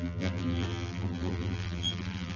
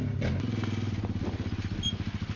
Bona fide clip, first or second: second